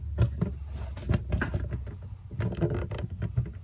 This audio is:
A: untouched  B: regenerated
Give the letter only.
A